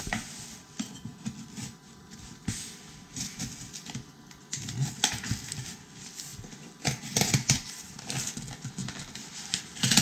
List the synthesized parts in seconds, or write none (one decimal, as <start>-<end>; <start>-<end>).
none